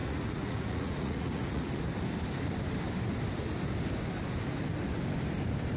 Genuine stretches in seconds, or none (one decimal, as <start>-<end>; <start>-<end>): 1.7-5.8